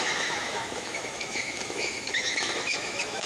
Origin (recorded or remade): remade